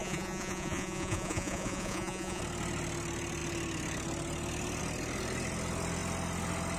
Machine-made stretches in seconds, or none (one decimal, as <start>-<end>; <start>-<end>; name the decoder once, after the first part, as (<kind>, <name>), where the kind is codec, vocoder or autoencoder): 0.0-2.4 (vocoder, Vocos)